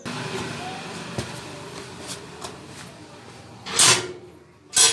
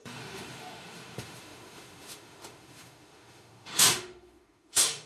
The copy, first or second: second